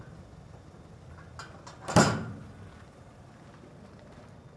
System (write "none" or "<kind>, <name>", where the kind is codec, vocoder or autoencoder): none